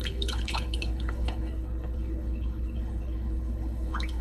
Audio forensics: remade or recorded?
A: remade